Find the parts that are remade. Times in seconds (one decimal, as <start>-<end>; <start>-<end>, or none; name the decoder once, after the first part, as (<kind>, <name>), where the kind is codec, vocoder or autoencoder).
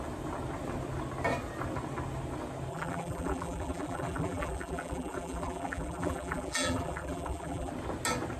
2.7-7.7 (vocoder, BigVGAN v2)